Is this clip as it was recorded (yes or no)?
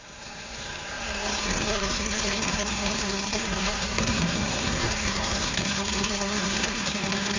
no